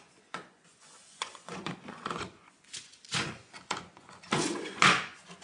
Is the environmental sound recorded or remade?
remade